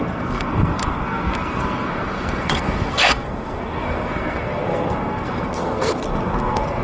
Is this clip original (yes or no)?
no